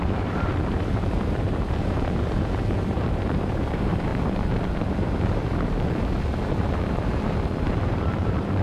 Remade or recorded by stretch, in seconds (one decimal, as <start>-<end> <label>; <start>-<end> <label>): 0.0-4.1 remade; 4.1-4.9 recorded; 4.9-8.6 remade